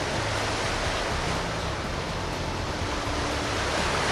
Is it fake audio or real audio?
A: real